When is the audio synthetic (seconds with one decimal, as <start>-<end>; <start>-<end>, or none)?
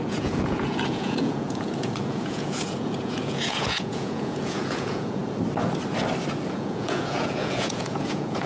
0.0-5.2; 6.5-8.5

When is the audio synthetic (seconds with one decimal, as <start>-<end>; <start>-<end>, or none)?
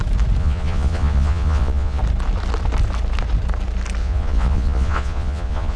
0.4-2.0; 4.0-5.8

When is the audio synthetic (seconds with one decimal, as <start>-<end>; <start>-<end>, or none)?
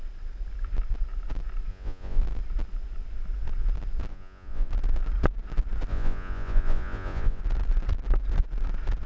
1.7-2.2; 4.1-4.7; 5.9-7.4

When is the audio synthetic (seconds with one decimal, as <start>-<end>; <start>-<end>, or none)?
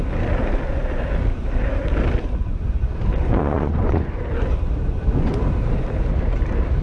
3.2-4.1; 4.8-5.3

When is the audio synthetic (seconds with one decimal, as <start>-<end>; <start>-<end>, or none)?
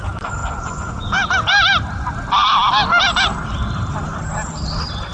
0.4-1.1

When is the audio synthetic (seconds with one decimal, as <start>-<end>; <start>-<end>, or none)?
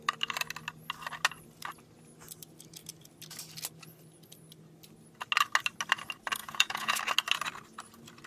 6.4-7.0